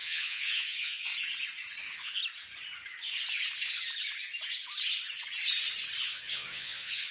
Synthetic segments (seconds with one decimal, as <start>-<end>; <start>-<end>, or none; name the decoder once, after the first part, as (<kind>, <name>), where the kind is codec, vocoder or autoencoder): 0.0-1.1 (vocoder, Vocos); 1.8-2.2; 6.0-7.1